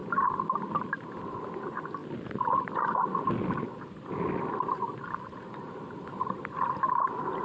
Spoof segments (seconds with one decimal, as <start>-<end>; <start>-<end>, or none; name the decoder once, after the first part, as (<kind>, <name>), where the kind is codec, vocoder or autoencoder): none